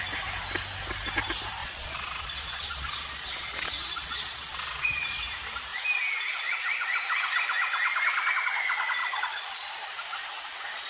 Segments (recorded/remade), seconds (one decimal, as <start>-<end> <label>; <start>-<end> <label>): 0.0-1.6 recorded; 1.6-5.0 remade; 5.0-9.0 recorded; 9.0-9.9 remade; 9.9-10.9 recorded